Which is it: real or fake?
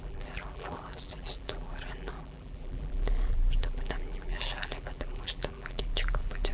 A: fake